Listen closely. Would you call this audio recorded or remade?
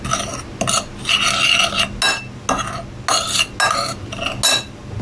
recorded